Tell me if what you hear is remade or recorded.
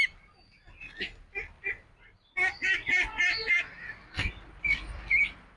recorded